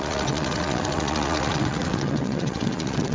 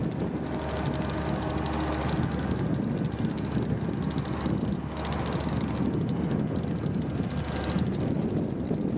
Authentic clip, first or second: second